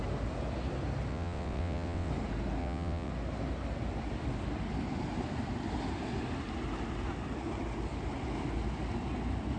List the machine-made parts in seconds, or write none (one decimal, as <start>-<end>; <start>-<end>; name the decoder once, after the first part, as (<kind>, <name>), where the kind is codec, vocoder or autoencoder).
1.1-2.1 (vocoder, WaveNeXt); 2.6-3.1